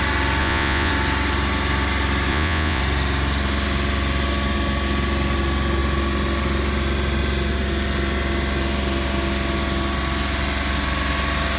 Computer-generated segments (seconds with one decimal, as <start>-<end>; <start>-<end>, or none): 0.4-0.9; 2.3-2.8